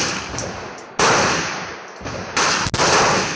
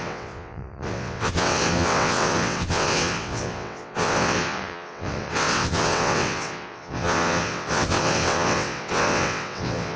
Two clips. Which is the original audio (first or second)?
first